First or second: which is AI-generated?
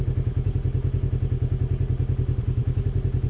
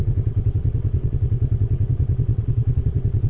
second